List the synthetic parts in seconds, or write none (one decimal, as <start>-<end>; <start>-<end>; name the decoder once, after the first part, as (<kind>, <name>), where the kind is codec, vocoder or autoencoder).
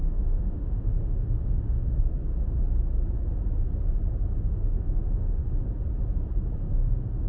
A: 0.0-2.1 (autoencoder, DAC-VAE); 4.4-5.4; 6.6-7.3